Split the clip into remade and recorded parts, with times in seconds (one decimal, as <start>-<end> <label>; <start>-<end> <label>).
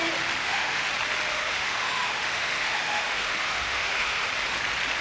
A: 0.0-0.4 recorded; 0.4-0.9 remade; 0.9-1.3 recorded; 1.3-4.3 remade; 4.3-5.0 recorded